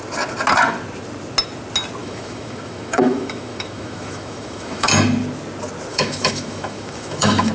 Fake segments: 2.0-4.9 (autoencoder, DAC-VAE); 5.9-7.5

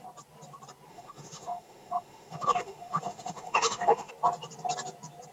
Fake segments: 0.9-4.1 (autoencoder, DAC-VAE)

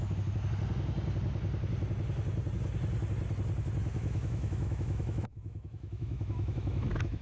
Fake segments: 3.9-7.2 (autoencoder, DAC-VAE)